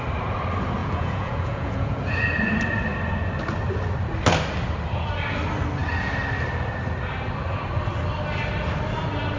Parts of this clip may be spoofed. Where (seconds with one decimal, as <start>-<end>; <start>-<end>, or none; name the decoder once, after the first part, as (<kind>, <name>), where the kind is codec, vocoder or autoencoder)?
0.8-2.1 (vocoder, Vocos)

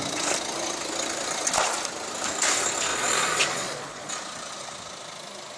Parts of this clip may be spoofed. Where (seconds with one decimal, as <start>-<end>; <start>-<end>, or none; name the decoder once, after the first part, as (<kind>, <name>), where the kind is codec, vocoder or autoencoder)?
2.9-4.1 (vocoder, Vocos)

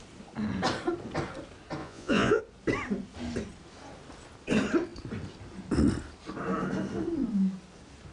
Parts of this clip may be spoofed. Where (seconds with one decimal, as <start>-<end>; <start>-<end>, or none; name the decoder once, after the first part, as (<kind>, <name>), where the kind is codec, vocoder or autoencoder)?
1.8-2.4 (vocoder, Vocos)